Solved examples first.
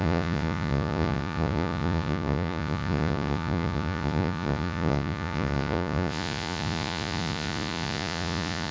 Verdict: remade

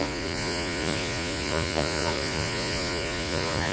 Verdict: remade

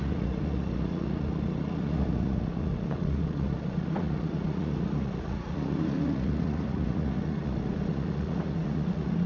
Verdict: remade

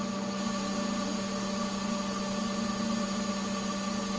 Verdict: recorded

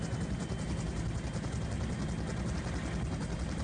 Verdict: recorded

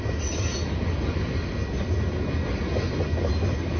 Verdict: recorded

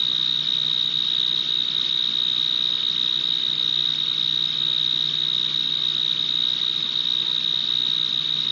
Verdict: recorded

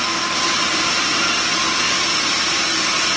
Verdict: recorded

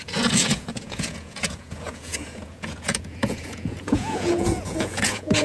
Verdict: remade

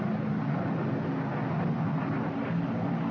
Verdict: recorded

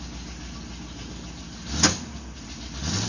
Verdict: recorded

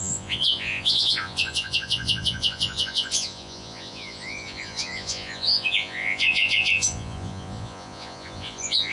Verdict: remade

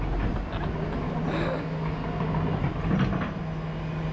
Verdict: recorded